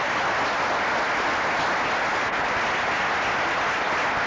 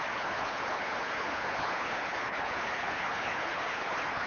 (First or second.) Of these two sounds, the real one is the first